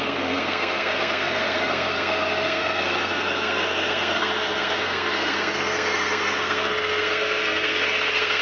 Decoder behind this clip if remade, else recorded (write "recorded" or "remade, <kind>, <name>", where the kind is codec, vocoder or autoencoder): remade, codec, SNAC